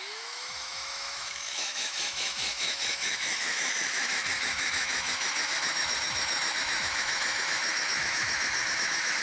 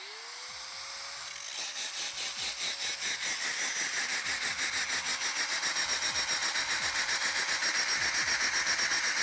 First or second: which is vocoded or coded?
first